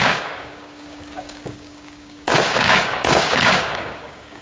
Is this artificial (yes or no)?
yes